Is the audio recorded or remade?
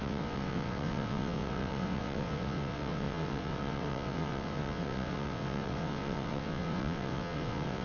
remade